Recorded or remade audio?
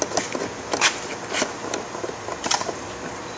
recorded